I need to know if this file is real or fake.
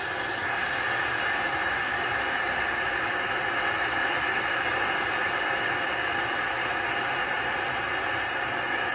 real